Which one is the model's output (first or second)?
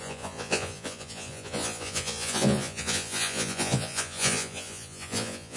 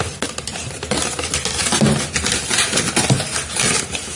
first